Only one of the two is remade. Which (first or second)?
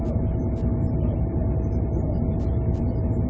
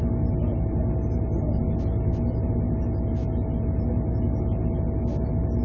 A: first